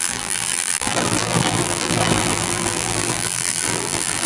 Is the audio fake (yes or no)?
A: yes